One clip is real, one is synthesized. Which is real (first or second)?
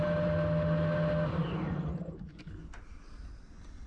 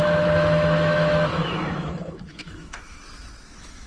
first